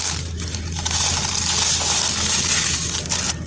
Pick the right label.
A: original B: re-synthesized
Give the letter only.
B